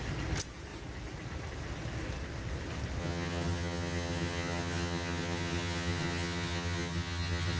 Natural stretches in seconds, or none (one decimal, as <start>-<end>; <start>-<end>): 0.0-3.0